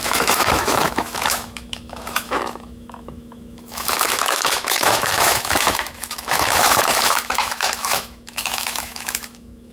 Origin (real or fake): fake